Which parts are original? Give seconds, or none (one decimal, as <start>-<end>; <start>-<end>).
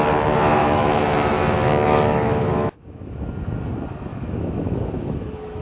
0.0-0.6; 3.3-4.1